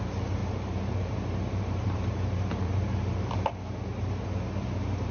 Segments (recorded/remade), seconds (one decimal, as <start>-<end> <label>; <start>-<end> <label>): 0.0-0.4 recorded; 0.4-3.5 remade; 3.5-5.1 recorded